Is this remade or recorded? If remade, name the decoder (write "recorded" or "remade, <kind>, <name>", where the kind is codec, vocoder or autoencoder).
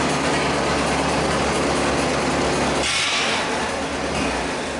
recorded